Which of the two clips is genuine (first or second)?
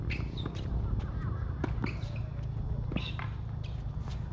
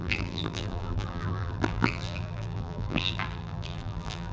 first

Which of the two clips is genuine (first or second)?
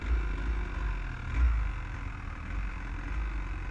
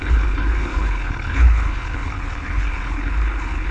first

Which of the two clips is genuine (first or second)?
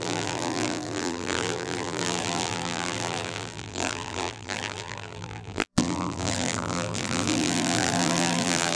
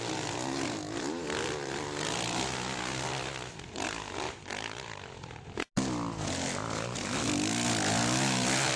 second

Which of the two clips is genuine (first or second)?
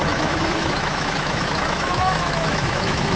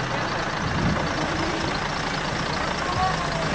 second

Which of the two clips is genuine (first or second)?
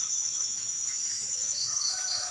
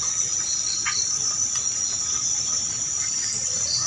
second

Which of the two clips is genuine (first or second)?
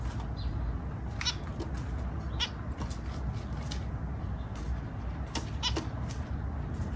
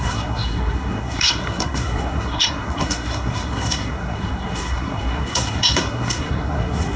first